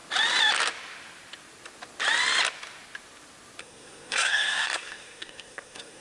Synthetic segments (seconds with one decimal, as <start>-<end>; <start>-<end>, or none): 3.6-6.0